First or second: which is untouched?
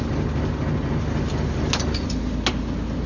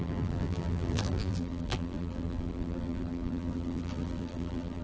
first